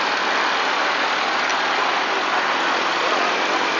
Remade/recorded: recorded